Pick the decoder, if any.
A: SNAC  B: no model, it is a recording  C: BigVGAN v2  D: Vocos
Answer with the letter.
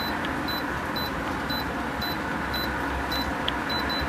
B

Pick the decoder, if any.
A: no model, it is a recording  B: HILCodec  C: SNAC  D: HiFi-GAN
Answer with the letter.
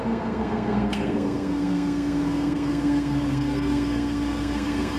C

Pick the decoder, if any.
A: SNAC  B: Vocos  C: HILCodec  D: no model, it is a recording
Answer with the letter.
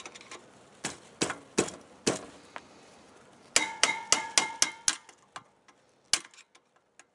D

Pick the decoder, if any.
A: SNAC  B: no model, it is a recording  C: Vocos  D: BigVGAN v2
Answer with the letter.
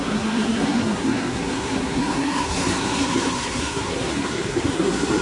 A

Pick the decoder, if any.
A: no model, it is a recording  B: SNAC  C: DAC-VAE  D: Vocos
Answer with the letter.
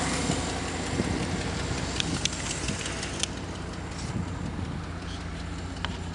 A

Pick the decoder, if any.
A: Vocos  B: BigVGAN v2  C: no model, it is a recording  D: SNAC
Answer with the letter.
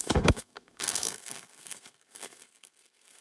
D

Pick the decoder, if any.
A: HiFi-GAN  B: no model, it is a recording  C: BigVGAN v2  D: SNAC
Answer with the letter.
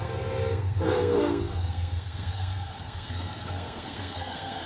D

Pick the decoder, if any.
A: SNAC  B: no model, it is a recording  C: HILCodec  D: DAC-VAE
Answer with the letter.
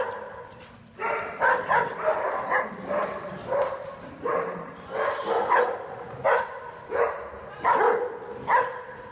B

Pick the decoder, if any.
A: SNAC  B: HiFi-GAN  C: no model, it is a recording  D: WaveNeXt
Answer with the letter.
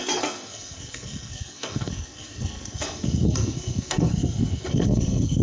A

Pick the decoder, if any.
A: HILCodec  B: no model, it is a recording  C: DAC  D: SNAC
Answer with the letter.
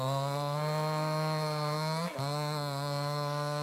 D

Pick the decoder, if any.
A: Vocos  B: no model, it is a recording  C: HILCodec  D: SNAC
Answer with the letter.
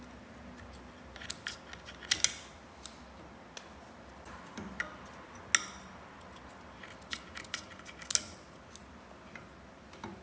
B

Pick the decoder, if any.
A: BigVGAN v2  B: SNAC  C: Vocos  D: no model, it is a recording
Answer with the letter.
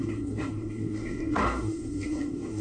B